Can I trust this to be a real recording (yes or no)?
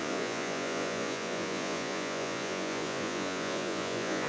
no